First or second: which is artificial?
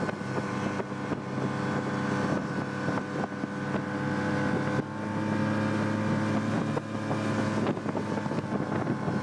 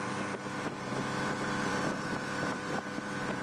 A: second